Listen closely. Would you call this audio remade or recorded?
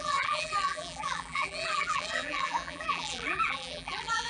remade